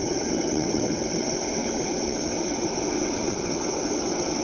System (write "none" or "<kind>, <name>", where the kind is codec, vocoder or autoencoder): vocoder, WaveNeXt